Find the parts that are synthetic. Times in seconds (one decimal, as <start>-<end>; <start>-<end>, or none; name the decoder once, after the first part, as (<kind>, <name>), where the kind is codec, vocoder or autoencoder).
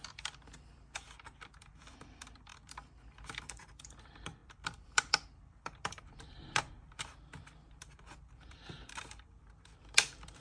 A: 0.0-10.4 (vocoder, BigVGAN v2)